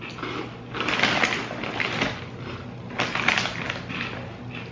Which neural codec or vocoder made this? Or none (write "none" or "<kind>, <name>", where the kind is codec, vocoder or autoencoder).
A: none